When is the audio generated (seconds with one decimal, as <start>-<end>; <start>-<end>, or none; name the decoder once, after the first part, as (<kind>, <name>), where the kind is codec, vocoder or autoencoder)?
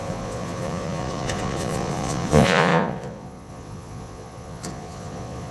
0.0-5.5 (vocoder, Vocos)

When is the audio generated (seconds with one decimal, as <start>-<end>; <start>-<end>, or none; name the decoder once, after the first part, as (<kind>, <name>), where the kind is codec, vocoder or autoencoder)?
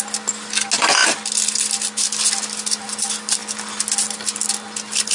none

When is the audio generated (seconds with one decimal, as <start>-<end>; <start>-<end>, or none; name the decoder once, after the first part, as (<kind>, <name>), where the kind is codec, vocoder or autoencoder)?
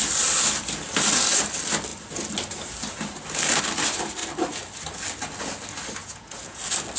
6.0-6.6 (vocoder, Vocos)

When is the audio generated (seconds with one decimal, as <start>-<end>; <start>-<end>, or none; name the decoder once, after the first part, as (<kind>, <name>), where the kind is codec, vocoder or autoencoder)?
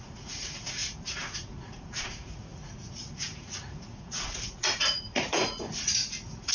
0.0-6.5 (vocoder, Vocos)